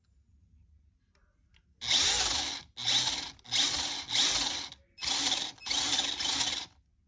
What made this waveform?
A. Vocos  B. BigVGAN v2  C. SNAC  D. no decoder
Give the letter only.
D